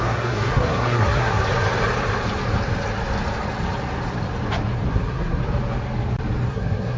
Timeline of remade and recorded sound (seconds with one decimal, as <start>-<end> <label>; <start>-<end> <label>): 0.0-1.4 remade; 1.4-4.9 recorded; 4.9-5.4 remade; 5.4-6.5 recorded; 6.5-7.0 remade